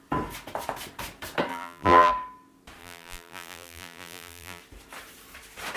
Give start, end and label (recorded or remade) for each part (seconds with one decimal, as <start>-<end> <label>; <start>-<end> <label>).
0.0-1.5 recorded; 1.5-2.1 remade; 2.1-2.8 recorded; 2.8-4.6 remade; 4.6-5.8 recorded